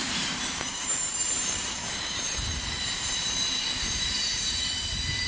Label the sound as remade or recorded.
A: remade